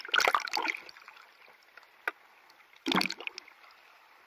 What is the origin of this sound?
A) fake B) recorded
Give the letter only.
B